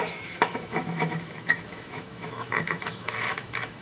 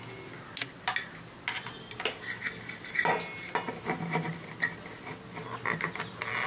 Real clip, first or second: second